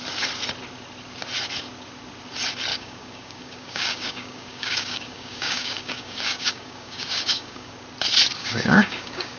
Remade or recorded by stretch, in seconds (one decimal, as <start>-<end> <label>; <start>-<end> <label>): 0.0-2.7 recorded; 2.7-7.7 remade; 7.7-8.4 recorded; 8.4-9.4 remade